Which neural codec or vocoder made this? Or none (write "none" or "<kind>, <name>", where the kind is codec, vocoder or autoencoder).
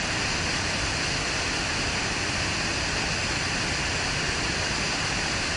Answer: none